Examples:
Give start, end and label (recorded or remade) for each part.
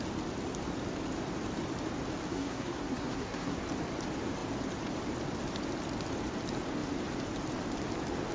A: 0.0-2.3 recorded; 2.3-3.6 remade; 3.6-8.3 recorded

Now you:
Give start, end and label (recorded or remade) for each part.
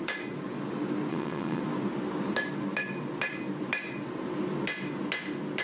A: 0.0-1.1 recorded; 1.1-1.6 remade; 1.6-5.6 recorded